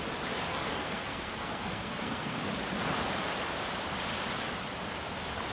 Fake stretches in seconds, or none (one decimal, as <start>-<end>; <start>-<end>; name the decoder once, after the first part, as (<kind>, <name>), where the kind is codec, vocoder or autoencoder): 0.5-2.4 (codec, SNAC)